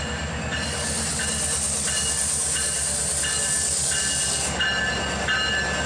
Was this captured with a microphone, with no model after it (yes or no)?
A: yes